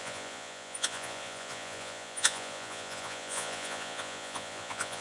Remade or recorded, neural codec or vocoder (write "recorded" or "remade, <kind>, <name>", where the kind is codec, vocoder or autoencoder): remade, vocoder, Vocos